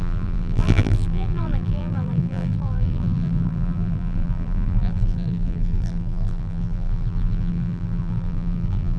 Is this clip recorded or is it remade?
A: remade